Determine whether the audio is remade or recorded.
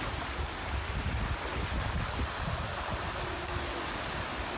recorded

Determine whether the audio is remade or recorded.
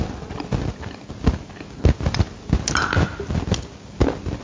recorded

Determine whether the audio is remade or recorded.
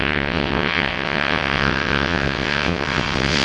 remade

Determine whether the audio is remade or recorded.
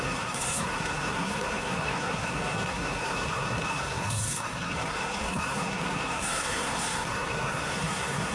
remade